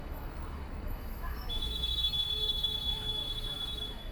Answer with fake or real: fake